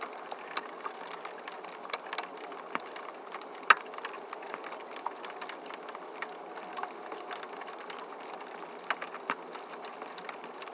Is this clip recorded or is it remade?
recorded